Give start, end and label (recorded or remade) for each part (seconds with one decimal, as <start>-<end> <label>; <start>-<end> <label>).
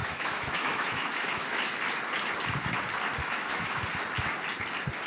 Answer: 0.0-1.7 remade; 1.7-3.2 recorded; 3.2-3.8 remade; 3.8-5.1 recorded